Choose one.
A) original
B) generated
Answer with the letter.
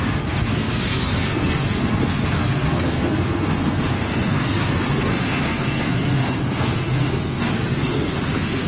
B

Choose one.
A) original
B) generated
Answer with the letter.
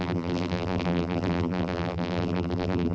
B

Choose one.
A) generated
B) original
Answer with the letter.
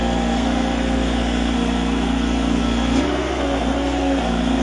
A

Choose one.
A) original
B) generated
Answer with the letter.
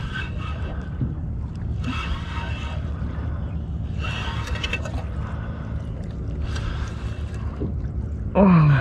A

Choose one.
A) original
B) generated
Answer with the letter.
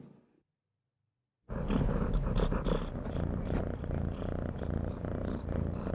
A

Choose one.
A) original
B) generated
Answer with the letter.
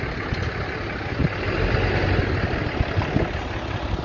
A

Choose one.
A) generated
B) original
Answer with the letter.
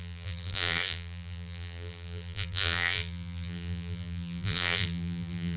A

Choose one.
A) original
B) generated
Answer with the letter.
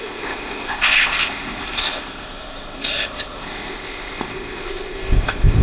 B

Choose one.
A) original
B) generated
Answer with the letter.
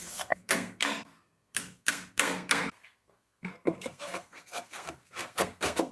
B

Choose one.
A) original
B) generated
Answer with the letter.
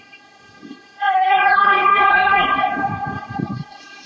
B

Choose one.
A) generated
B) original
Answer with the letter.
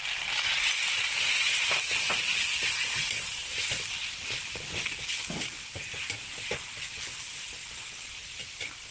B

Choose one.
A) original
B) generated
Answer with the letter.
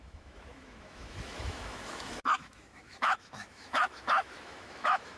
B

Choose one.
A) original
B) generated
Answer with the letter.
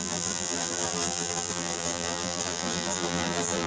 B